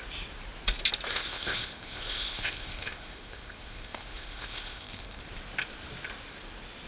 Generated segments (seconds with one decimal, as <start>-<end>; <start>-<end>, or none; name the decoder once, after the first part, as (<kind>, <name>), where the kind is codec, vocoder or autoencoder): 1.1-5.2 (codec, ZipCodec)